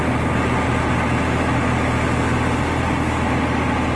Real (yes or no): yes